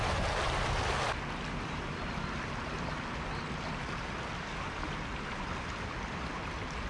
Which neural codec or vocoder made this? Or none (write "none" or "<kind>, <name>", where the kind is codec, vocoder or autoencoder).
none